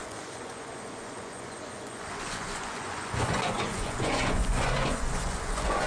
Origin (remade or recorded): remade